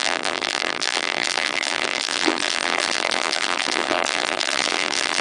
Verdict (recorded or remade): remade